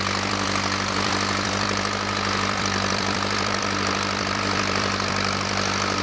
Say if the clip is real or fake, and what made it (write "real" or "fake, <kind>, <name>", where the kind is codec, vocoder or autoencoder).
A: fake, vocoder, BigVGAN v2